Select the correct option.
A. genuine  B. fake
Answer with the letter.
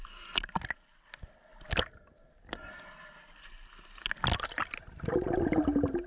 A